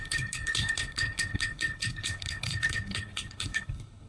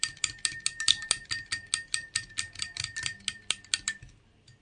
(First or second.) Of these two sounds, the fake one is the first